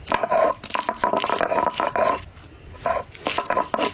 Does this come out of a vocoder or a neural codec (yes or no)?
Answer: no